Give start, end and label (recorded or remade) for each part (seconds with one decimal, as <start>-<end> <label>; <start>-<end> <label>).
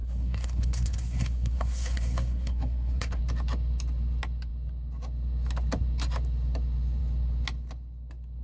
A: 0.0-3.2 remade; 3.2-8.4 recorded